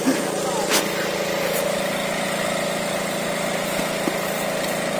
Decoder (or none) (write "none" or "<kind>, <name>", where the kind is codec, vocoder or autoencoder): none